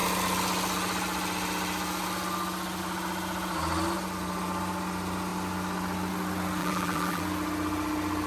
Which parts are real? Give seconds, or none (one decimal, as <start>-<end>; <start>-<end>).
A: 0.0-6.6; 7.2-8.3